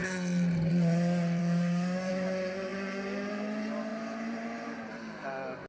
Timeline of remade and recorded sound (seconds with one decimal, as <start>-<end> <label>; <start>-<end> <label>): 0.0-1.4 recorded; 1.4-2.1 remade; 2.1-5.7 recorded